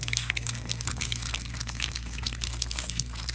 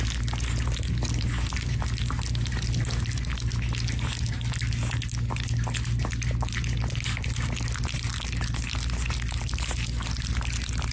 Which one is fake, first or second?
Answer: first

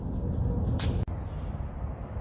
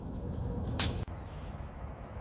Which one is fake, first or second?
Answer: second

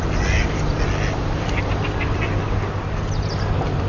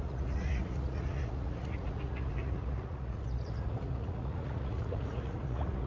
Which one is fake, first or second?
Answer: second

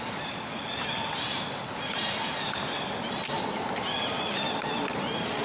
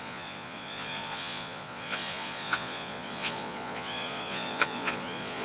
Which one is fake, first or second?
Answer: second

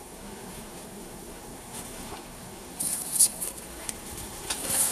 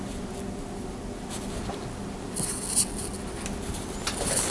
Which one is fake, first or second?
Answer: first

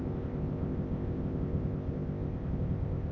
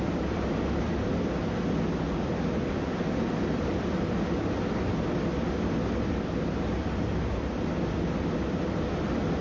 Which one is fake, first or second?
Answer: first